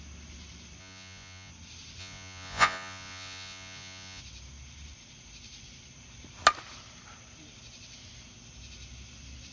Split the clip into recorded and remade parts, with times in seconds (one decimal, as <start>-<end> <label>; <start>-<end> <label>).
0.0-0.8 recorded; 0.8-1.5 remade; 1.5-2.0 recorded; 2.0-4.2 remade; 4.2-9.5 recorded